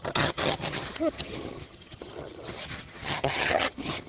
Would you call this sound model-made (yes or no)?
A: yes